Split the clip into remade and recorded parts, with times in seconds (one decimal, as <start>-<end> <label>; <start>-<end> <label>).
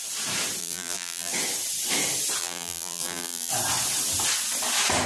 0.0-0.6 recorded; 0.6-1.3 remade; 1.3-2.4 recorded; 2.4-3.5 remade; 3.5-5.1 recorded